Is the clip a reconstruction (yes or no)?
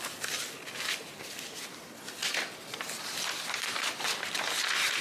no